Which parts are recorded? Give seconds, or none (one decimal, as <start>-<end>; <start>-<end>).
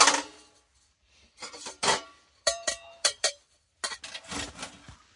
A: 0.0-0.7; 3.8-5.2